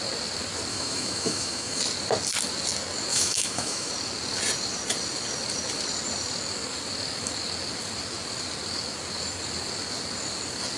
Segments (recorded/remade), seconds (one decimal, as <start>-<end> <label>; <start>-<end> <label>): 0.0-0.7 recorded; 0.7-1.8 remade; 1.8-3.1 recorded; 3.1-3.9 remade; 3.9-10.8 recorded